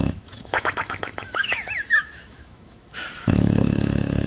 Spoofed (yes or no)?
yes